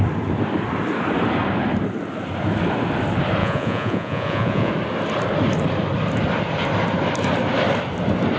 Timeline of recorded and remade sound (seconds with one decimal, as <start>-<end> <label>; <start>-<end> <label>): 0.0-3.4 recorded; 3.4-4.7 remade; 4.7-8.4 recorded